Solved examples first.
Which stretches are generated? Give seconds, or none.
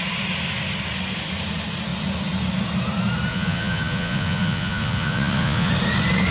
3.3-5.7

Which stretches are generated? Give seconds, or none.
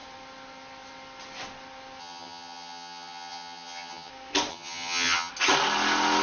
2.0-4.1; 4.5-5.3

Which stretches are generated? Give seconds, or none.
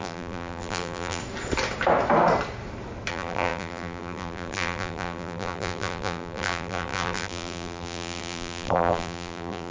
0.0-1.2; 3.1-9.7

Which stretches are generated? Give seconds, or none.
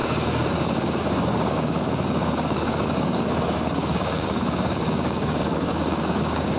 0.0-6.6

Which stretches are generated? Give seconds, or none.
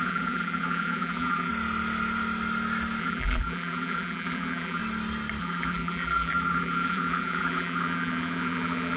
0.0-1.5; 3.0-4.8; 5.4-9.0